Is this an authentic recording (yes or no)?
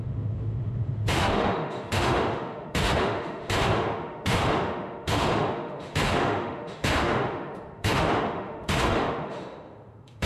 no